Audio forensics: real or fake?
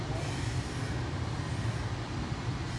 real